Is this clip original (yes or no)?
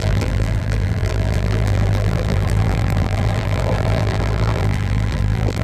no